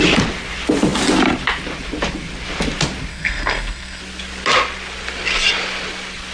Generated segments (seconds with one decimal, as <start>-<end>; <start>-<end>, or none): 3.1-4.0